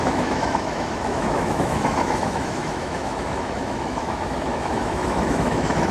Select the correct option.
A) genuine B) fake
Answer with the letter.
B